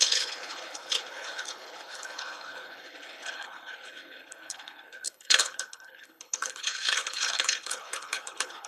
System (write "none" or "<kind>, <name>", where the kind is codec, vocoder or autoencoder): codec, HILCodec